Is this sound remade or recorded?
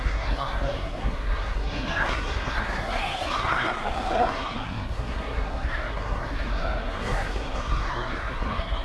remade